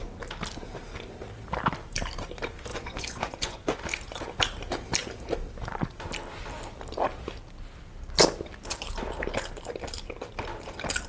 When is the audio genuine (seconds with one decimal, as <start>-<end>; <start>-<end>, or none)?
0.0-2.7; 3.8-11.1